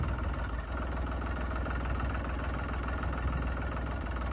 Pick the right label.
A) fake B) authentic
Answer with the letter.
B